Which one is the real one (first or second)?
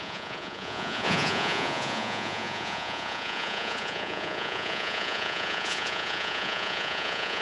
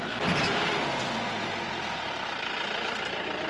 second